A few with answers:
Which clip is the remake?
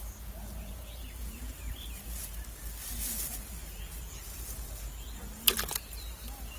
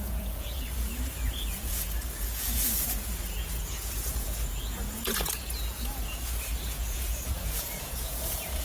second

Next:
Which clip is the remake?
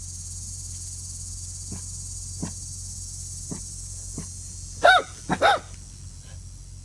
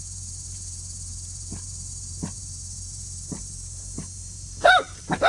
second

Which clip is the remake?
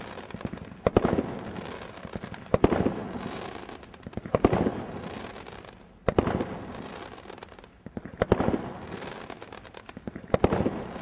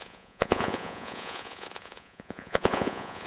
second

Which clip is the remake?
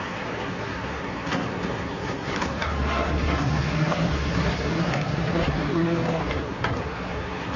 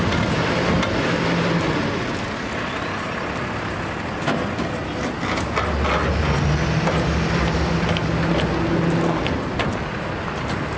first